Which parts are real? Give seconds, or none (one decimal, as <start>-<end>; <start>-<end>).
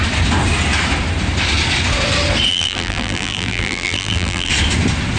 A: 0.0-2.5; 4.5-5.2